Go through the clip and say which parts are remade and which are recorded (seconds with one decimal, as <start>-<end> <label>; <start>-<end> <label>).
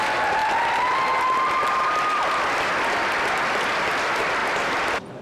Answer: 0.0-5.2 recorded